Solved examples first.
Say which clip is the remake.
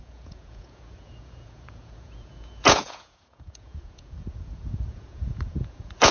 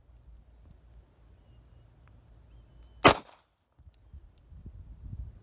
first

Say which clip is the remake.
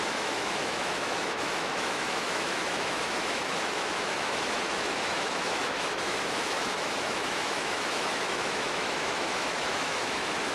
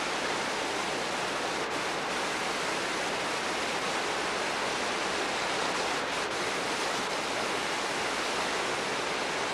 first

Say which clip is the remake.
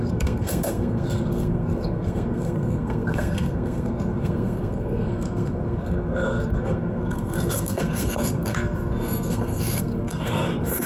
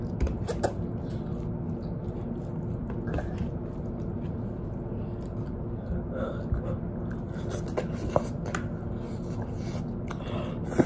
first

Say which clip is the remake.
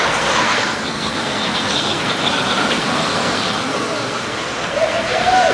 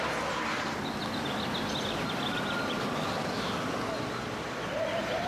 first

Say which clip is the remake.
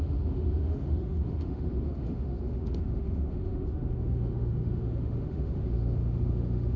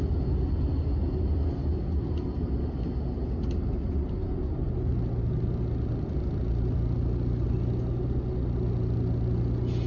first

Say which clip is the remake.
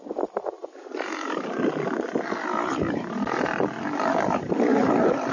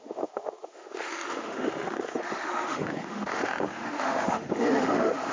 second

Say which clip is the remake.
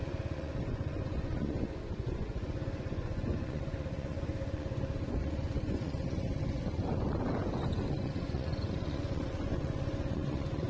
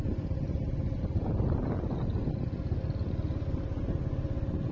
first